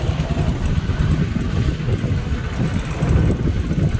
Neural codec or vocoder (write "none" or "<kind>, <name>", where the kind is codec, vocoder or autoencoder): none